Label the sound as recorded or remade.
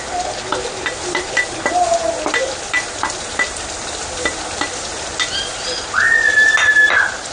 recorded